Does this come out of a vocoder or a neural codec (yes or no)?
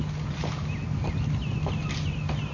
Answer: no